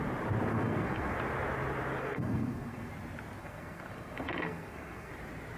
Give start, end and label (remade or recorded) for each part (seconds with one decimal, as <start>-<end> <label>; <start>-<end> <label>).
0.0-0.5 recorded; 0.5-1.1 remade; 1.1-2.0 recorded; 2.0-2.9 remade; 2.9-3.4 recorded; 3.4-5.1 remade; 5.1-5.6 recorded

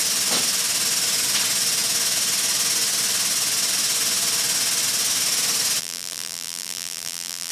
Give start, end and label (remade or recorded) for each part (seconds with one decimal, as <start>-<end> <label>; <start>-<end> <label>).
0.0-5.8 recorded; 5.8-7.5 remade

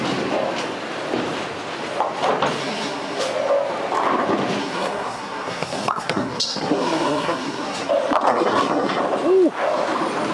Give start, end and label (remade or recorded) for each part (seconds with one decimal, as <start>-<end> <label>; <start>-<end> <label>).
0.0-2.6 recorded; 2.6-3.2 remade; 3.2-4.6 recorded; 4.6-7.9 remade; 7.9-8.3 recorded; 8.3-9.0 remade; 9.0-10.3 recorded

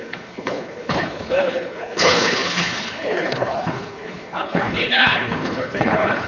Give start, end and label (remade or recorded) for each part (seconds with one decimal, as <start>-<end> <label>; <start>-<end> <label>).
0.0-6.3 remade

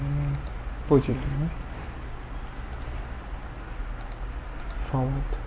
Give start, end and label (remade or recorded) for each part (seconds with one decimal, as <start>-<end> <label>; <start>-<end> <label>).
0.0-5.5 recorded

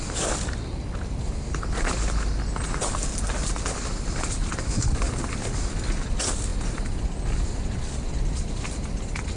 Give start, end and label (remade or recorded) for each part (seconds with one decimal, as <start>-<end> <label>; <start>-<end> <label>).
0.0-9.4 recorded